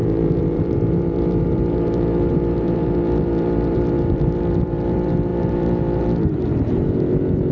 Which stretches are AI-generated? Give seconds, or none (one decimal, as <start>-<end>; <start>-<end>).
0.0-7.5